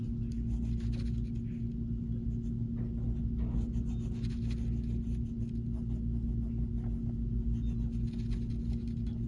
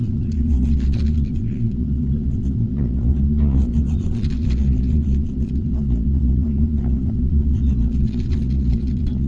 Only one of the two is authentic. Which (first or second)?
first